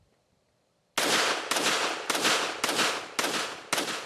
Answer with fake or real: real